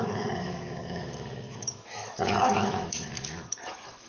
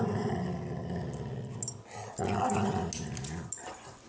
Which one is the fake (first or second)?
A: first